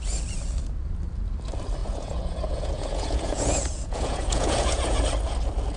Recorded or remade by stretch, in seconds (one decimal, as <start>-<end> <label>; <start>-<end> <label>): 0.0-1.8 recorded; 1.8-5.0 remade; 5.0-5.8 recorded